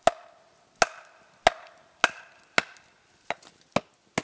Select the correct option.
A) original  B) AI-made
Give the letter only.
A